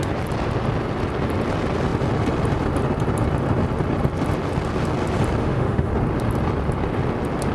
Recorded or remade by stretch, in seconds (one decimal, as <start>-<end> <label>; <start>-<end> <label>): 0.0-5.4 recorded; 5.4-5.9 remade; 5.9-7.5 recorded